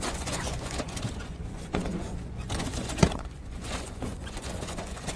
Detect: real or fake fake